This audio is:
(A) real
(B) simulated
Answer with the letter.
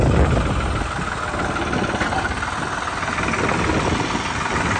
A